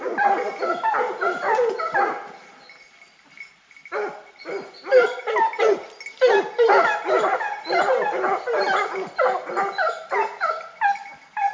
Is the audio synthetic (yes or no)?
no